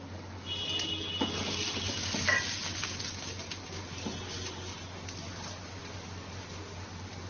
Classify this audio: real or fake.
real